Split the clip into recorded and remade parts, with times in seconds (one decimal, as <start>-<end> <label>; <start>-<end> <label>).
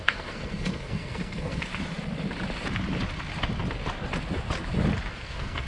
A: 0.0-1.7 remade; 1.7-5.1 recorded; 5.1-5.7 remade